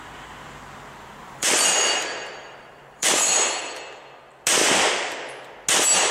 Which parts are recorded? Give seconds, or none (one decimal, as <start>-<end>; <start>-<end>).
0.0-1.2; 3.5-6.1